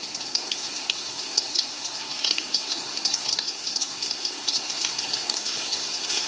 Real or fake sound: fake